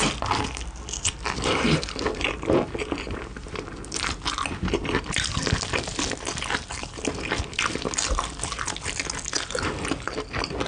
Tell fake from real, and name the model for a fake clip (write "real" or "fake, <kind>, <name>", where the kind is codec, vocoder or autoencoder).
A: real